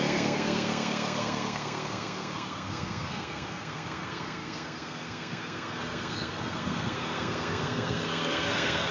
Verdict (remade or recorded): remade